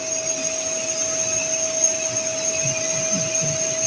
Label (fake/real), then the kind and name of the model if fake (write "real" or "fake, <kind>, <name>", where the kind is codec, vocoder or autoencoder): real